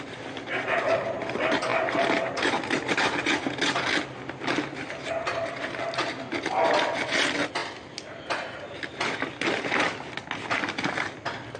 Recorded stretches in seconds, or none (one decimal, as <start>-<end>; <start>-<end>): 0.0-11.6